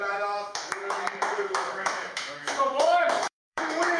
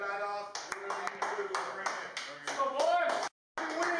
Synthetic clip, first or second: first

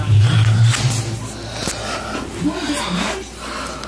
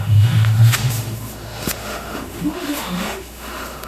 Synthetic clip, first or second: second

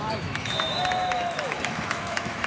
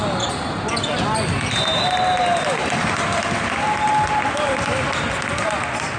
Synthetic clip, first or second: first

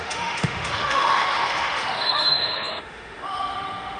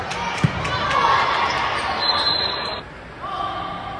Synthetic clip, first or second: first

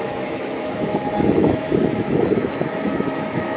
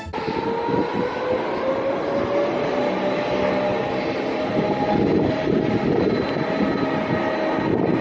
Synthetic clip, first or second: first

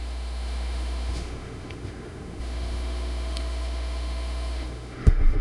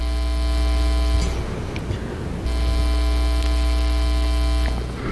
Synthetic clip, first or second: first